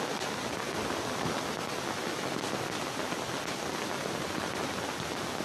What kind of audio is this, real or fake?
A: real